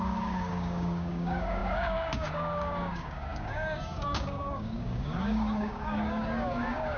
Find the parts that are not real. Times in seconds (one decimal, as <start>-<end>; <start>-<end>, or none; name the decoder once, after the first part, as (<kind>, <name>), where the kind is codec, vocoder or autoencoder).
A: 0.0-7.0 (codec, DAC)